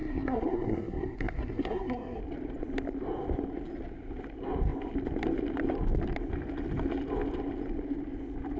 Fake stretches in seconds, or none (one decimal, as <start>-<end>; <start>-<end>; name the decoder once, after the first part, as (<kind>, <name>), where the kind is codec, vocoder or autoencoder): 0.0-2.2 (codec, SNAC)